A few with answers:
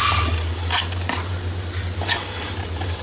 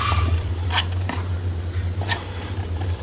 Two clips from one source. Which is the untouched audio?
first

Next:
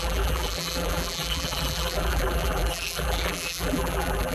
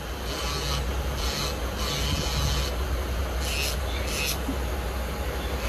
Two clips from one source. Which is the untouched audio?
second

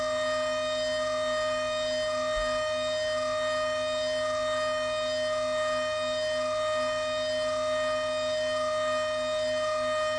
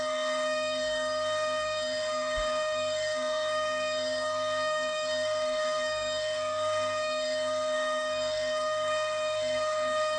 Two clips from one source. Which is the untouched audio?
first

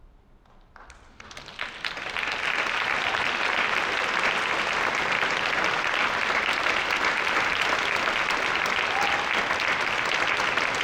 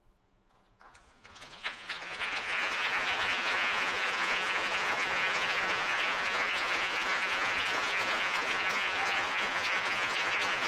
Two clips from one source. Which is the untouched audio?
first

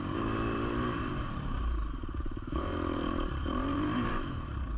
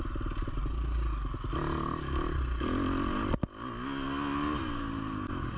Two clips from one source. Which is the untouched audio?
second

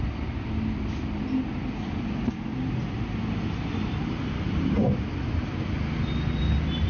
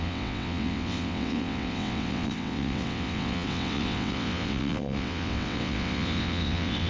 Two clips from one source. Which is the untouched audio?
first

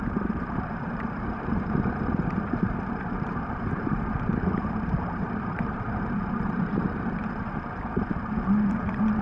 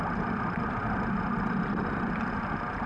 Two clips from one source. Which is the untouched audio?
second